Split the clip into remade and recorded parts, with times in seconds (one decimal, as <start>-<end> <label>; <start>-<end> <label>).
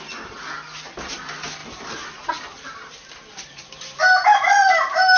0.0-5.2 recorded